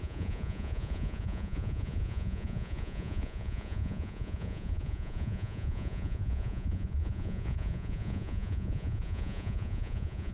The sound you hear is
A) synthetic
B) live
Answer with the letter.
A